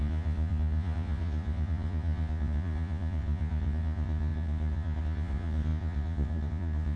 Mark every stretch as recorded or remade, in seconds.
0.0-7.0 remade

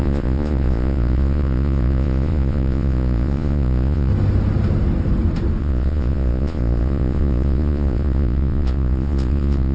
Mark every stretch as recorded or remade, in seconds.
0.0-4.1 remade; 4.1-5.6 recorded; 5.6-9.7 remade

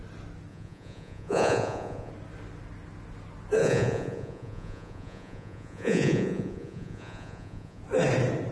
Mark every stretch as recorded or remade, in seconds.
0.0-0.5 recorded; 0.5-2.1 remade; 2.1-3.6 recorded; 3.6-7.8 remade; 7.8-8.5 recorded

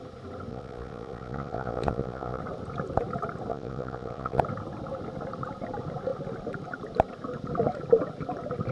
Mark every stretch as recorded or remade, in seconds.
0.0-0.5 recorded; 0.5-2.4 remade; 2.4-3.5 recorded; 3.5-4.4 remade; 4.4-8.7 recorded

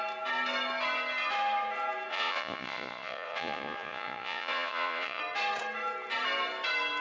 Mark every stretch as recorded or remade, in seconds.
0.0-2.1 recorded; 2.1-5.2 remade; 5.2-7.0 recorded

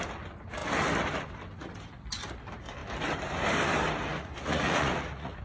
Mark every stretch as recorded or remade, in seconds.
0.0-4.1 recorded; 4.1-5.4 remade

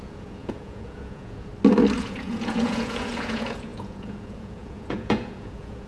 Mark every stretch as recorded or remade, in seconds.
0.0-1.5 remade; 1.5-2.0 recorded; 2.0-5.9 remade

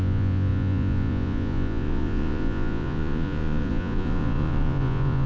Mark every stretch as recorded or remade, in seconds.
0.0-5.3 remade